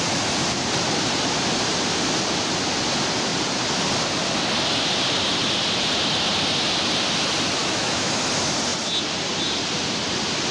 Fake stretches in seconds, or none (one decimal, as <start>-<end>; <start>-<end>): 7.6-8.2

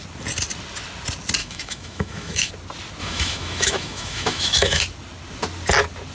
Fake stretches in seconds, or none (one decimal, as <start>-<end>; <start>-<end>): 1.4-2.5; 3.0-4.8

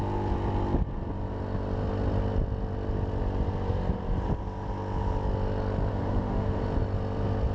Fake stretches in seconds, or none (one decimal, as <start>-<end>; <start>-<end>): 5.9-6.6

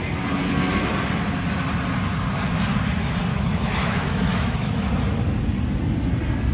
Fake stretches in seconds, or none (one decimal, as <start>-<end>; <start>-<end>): 3.3-4.9

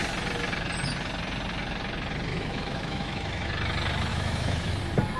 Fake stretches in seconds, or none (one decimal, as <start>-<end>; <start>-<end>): 2.3-3.5; 4.1-4.8